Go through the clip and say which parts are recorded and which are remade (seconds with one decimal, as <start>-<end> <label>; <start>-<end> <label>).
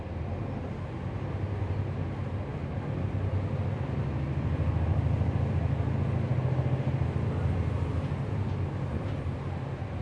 0.0-2.5 recorded; 2.5-3.5 remade; 3.5-10.0 recorded